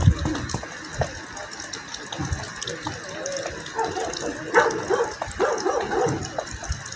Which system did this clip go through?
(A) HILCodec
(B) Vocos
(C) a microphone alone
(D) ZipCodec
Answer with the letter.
C